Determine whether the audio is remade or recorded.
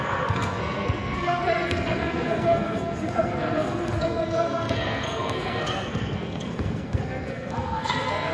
remade